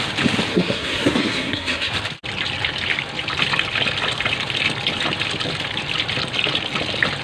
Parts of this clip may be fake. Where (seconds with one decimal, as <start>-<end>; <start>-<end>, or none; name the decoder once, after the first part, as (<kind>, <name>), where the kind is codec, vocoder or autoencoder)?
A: 0.5-1.9 (codec, SNAC)